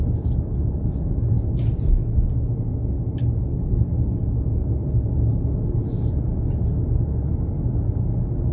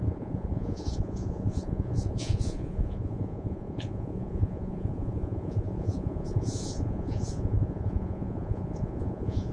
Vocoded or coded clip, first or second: second